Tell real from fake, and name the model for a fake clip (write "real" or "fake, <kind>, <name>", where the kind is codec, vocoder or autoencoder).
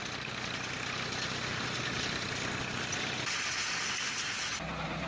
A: real